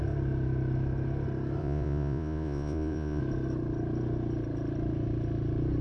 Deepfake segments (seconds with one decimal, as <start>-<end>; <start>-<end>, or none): 1.6-3.2